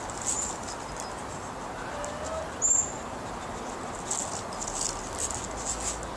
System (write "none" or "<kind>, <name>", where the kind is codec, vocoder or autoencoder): none